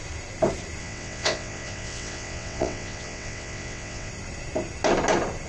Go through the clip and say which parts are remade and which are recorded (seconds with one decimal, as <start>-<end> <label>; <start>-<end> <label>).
0.0-0.8 recorded; 0.8-4.1 remade; 4.1-5.5 recorded